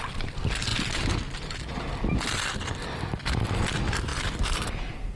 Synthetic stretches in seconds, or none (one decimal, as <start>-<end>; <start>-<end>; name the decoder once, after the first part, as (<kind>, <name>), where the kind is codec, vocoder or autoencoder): none